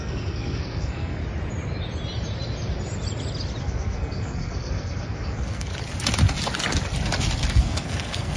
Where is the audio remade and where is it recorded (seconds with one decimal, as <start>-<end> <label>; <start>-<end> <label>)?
0.0-1.2 remade; 1.2-3.6 recorded; 3.6-5.7 remade; 5.7-7.5 recorded; 7.5-8.4 remade

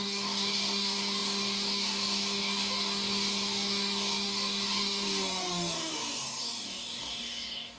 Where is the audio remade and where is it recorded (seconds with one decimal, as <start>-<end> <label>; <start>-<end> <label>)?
0.0-7.8 remade

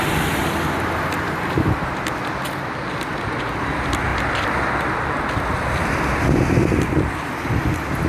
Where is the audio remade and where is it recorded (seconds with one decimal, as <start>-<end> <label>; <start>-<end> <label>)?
0.0-8.1 recorded

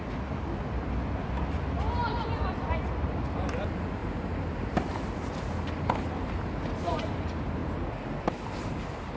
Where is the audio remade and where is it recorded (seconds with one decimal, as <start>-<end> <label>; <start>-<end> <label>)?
0.0-4.0 recorded; 4.0-6.2 remade; 6.2-7.6 recorded; 7.6-9.2 remade

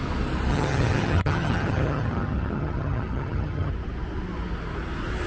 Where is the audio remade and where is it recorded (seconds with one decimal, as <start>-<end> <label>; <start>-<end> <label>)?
0.0-0.5 recorded; 0.5-3.7 remade; 3.7-5.3 recorded